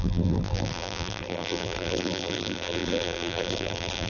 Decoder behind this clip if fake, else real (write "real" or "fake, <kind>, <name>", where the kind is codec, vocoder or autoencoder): fake, vocoder, BigVGAN v2